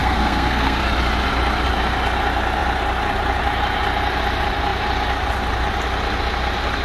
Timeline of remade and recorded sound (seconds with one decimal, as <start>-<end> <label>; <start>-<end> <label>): 0.0-0.8 remade; 0.8-6.8 recorded